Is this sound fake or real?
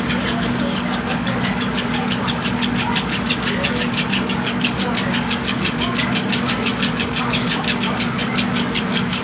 fake